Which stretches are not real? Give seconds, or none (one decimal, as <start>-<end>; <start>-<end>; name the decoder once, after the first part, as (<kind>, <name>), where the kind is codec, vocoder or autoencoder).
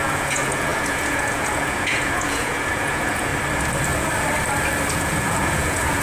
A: 0.0-3.3 (vocoder, Vocos); 4.9-6.0